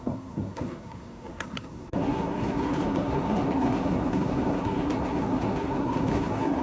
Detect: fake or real fake